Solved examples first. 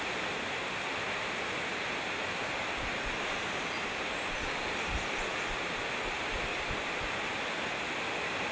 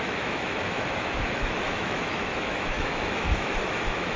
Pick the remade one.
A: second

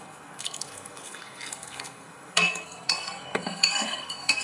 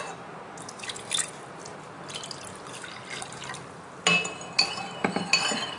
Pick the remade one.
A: first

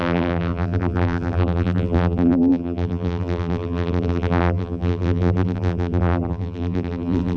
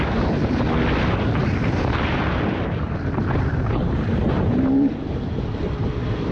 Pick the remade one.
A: first